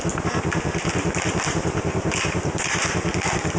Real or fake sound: fake